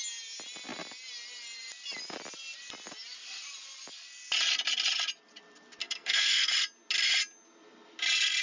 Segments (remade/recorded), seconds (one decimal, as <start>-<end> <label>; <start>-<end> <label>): 0.0-5.8 recorded; 5.8-6.5 remade; 6.5-8.4 recorded